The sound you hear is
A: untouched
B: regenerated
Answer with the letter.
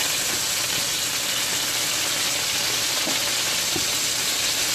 A